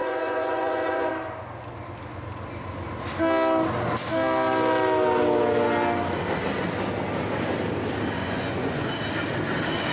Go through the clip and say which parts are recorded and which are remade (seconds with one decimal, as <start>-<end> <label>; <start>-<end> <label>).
0.0-1.1 remade; 1.1-8.2 recorded; 8.2-8.9 remade; 8.9-9.9 recorded